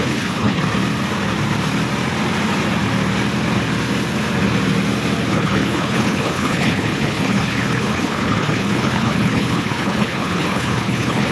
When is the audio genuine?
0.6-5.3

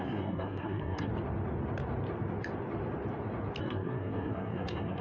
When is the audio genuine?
1.1-3.6